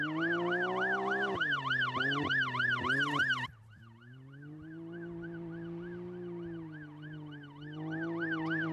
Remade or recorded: recorded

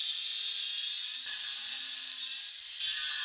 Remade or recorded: recorded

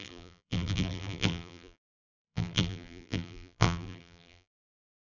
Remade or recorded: remade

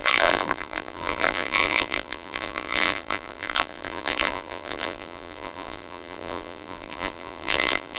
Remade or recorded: remade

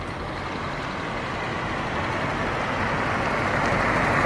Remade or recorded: recorded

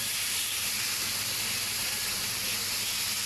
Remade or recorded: recorded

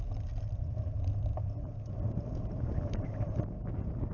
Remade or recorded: recorded